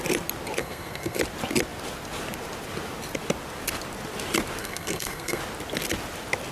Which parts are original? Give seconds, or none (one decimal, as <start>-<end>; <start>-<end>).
0.0-0.6; 1.2-4.6; 5.4-6.5